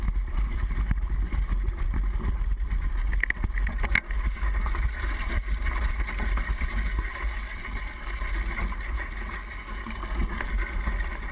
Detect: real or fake real